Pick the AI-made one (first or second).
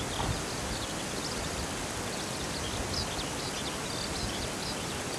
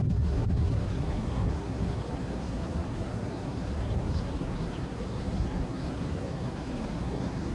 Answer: second